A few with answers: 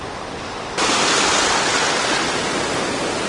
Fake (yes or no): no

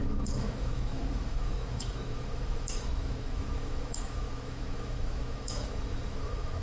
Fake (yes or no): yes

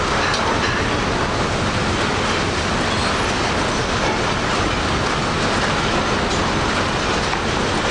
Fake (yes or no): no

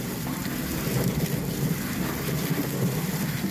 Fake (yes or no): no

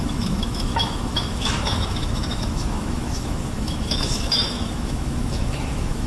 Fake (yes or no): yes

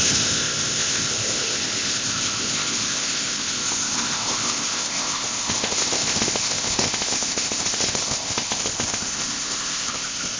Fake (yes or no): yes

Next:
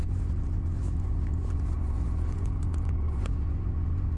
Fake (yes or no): yes